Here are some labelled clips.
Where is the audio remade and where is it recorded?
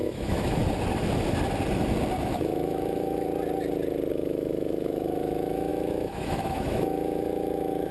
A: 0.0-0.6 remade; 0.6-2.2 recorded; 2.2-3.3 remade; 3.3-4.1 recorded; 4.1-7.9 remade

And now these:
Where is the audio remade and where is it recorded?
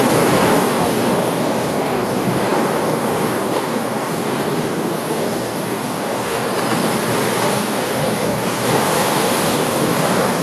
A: 0.0-6.5 remade; 6.5-7.5 recorded; 7.5-10.4 remade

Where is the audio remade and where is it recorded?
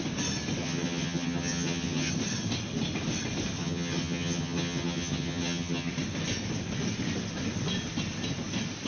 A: 0.0-0.6 recorded; 0.6-2.1 remade; 2.1-3.6 recorded; 3.6-5.9 remade; 5.9-8.9 recorded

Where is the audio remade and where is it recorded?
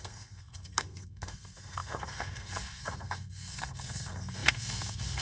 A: 0.0-5.2 remade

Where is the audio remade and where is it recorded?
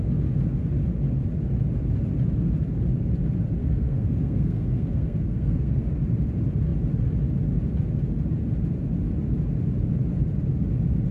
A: 0.0-3.6 recorded; 3.6-5.9 remade; 5.9-11.1 recorded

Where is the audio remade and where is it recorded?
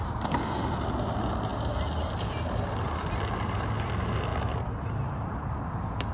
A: 0.0-6.1 recorded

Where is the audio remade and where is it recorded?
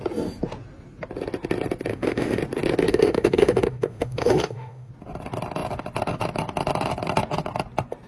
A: 0.0-1.9 recorded; 1.9-2.4 remade; 2.4-2.9 recorded; 2.9-4.9 remade; 4.9-8.1 recorded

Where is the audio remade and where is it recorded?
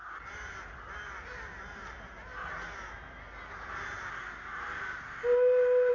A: 0.0-5.9 recorded